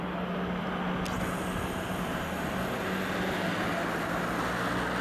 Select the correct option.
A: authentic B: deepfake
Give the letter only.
A